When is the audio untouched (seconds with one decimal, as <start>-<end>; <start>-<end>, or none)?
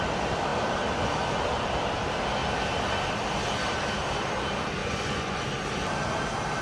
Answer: 0.0-4.8; 5.4-6.6